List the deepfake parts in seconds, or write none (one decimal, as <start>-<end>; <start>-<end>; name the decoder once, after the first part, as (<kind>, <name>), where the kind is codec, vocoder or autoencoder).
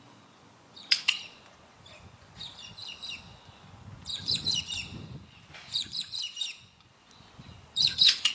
0.0-8.3 (vocoder, Vocos)